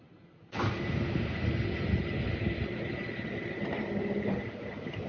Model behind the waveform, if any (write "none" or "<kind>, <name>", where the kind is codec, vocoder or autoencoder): vocoder, BigVGAN v2